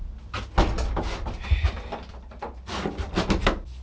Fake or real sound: real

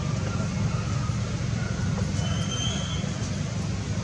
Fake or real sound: real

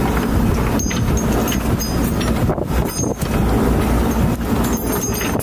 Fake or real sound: real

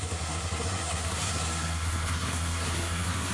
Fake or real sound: fake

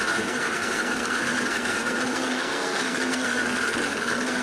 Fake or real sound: fake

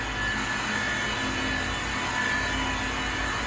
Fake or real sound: real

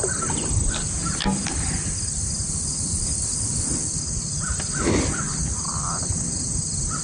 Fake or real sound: real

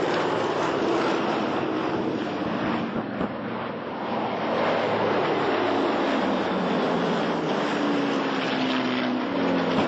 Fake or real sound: real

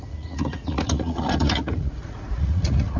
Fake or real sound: fake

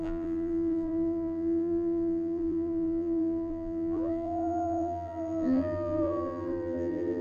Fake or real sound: fake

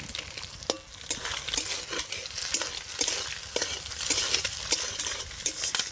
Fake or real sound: real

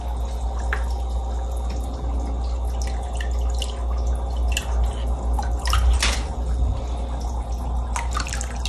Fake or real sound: real